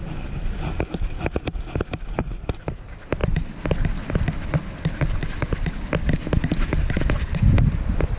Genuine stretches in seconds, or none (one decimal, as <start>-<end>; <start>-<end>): 0.0-8.2